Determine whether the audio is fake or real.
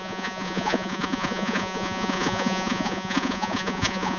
fake